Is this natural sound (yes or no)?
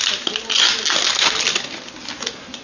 yes